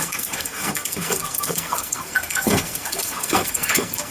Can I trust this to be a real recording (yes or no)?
no